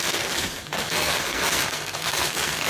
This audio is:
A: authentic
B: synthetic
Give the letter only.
B